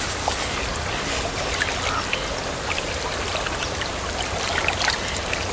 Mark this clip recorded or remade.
recorded